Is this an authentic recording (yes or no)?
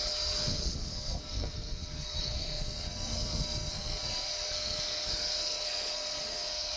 no